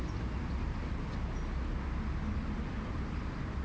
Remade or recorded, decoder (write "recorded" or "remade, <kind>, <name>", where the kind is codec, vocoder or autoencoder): recorded